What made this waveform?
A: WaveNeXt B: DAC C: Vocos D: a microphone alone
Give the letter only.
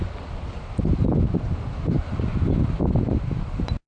D